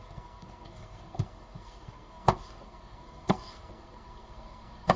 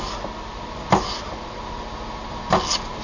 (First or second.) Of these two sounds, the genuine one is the second